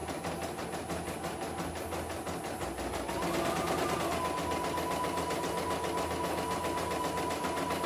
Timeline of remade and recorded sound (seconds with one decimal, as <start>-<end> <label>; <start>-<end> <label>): 0.0-7.9 recorded